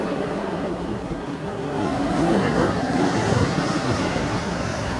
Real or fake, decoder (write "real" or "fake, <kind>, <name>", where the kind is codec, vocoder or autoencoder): fake, codec, SNAC